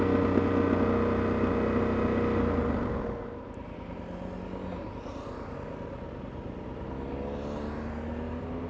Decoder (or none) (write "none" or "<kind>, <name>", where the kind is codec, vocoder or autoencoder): none